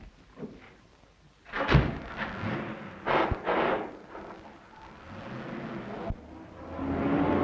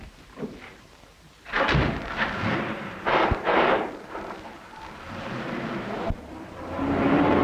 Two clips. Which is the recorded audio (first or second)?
first